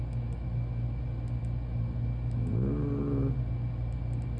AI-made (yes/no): no